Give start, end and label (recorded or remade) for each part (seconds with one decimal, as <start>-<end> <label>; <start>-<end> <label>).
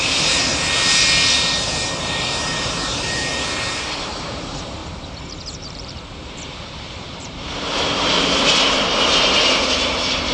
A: 0.0-0.5 remade; 0.5-2.0 recorded; 2.0-3.3 remade; 3.3-4.2 recorded; 4.2-4.8 remade; 4.8-5.4 recorded; 5.4-10.3 remade